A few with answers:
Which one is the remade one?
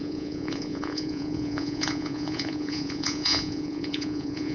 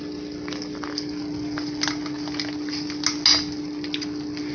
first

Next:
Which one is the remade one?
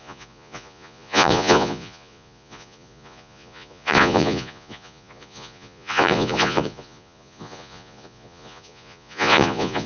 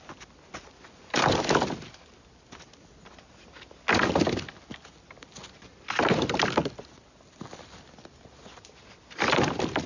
first